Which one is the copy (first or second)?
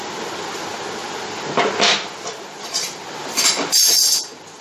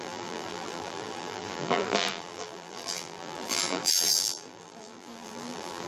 second